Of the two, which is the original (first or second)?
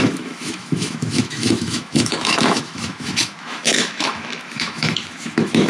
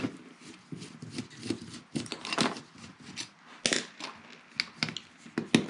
second